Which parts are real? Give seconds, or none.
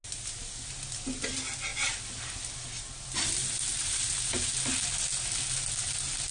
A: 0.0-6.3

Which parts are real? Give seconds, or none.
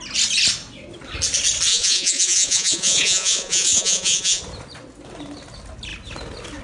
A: 0.0-1.7; 4.4-6.6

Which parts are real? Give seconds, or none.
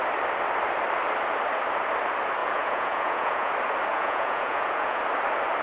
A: 0.0-2.4; 3.5-3.9; 5.0-5.6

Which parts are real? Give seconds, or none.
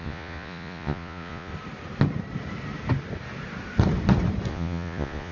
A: 1.5-4.5